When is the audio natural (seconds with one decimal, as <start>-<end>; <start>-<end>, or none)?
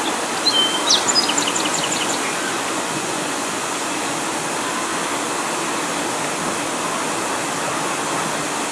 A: 0.0-1.7; 4.2-8.7